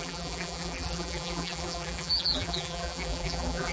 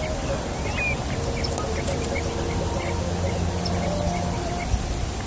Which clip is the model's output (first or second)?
first